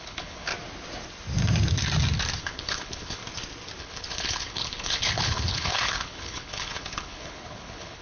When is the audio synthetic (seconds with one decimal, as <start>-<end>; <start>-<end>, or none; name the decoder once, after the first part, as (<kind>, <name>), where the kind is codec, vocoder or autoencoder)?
0.0-0.5 (codec, HILCodec); 2.4-3.2; 3.8-8.0